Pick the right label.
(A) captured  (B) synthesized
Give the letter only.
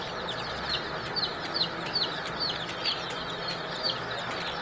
A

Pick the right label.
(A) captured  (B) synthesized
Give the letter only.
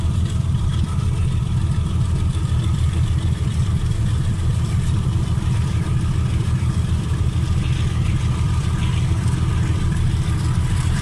B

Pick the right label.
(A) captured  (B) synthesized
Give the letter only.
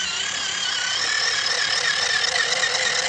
A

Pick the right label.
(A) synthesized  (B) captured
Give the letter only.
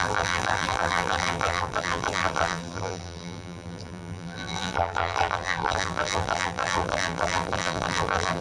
A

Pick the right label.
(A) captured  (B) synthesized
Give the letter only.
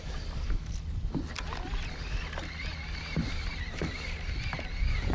A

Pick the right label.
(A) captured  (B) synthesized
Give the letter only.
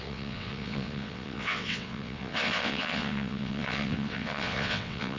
B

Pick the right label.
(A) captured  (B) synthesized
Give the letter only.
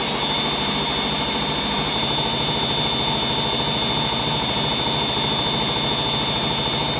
A